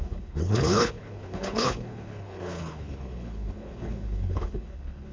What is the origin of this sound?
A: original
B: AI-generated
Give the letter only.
B